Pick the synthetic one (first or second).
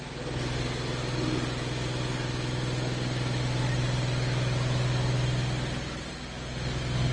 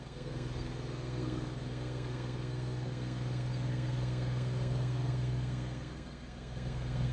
second